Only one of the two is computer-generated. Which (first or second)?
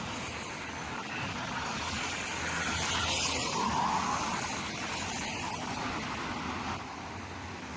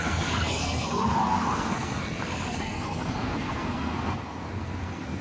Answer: second